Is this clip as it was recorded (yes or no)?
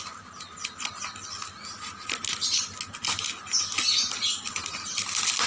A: yes